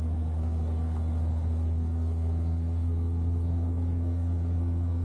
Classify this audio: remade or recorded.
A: remade